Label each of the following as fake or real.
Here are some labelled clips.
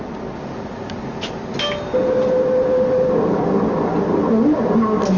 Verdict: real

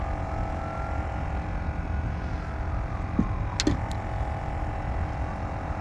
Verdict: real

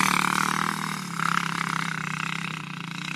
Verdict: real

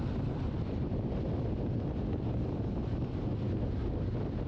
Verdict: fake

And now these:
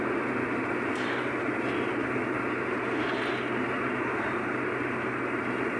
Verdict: real